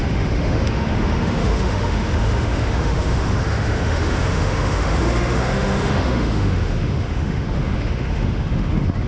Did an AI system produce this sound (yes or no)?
yes